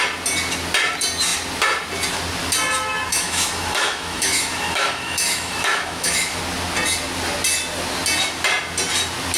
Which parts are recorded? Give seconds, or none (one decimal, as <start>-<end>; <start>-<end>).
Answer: 0.0-3.1; 6.4-9.4